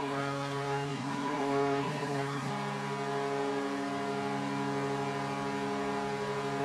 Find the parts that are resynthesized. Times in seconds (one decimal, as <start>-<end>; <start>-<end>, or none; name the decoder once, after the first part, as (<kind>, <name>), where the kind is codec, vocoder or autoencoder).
0.0-2.5 (codec, SNAC)